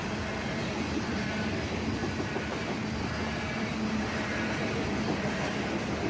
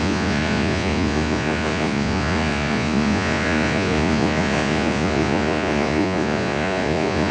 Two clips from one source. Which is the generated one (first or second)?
second